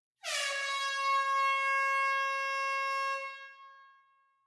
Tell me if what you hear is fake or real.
real